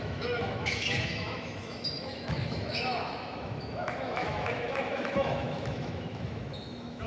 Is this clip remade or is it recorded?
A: remade